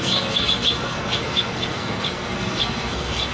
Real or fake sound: fake